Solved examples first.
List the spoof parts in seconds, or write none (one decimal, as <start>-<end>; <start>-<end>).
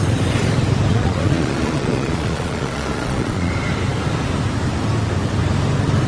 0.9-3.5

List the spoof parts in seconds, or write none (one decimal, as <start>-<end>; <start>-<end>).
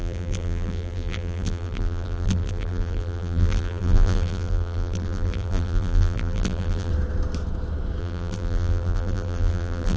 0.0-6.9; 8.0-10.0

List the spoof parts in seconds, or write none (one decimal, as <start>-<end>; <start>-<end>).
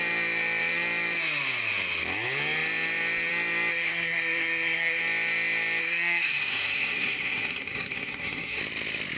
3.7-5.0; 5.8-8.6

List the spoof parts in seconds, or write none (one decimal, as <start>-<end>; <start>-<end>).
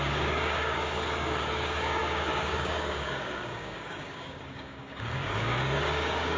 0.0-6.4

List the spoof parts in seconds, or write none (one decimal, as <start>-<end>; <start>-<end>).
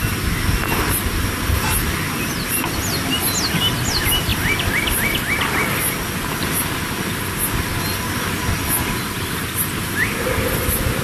none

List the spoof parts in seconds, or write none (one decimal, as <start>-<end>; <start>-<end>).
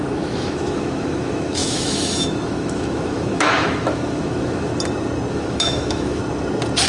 0.0-4.7; 5.3-6.2